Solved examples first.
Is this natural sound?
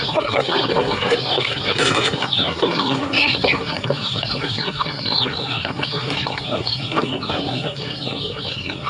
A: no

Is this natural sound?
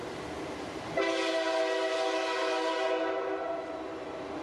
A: yes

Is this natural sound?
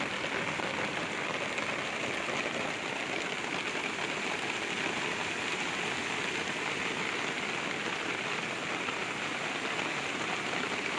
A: yes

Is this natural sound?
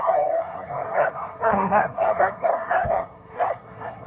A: no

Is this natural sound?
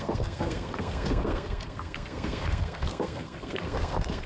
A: no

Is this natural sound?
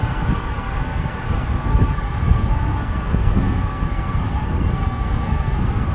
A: no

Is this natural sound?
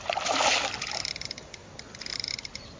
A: yes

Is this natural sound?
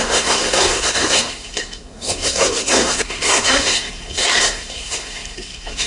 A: no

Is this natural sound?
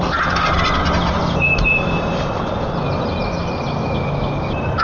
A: yes